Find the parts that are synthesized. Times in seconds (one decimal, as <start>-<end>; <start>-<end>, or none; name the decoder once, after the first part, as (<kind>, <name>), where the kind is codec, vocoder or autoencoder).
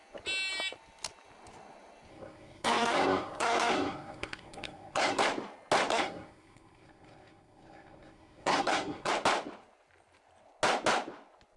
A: 2.1-5.2 (codec, SNAC); 5.9-9.1